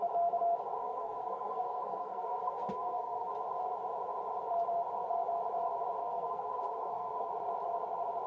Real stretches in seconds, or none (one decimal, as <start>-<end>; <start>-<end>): 0.0-0.8; 3.3-6.0; 7.3-8.3